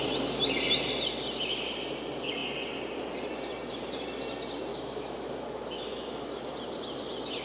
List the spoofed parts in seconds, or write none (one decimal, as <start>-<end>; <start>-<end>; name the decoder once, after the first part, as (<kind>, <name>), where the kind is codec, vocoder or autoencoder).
4.7-6.4 (autoencoder, DAC-VAE)